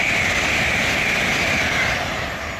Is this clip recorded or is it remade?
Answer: recorded